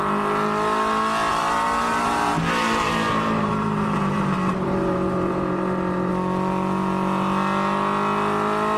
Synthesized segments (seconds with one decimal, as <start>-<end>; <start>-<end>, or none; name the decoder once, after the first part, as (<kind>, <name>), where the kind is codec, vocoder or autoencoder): 1.3-6.1 (vocoder, BigVGAN v2)